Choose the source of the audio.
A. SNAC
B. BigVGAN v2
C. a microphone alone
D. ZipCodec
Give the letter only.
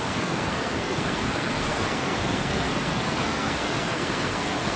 A